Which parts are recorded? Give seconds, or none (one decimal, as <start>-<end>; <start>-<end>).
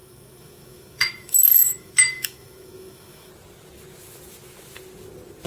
3.3-5.5